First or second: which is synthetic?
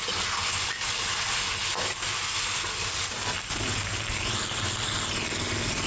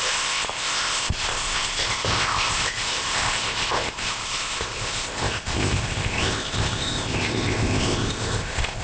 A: second